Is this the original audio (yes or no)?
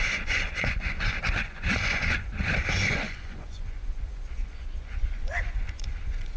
no